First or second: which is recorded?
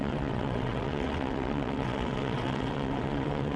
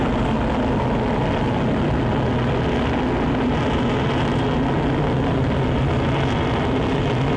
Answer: second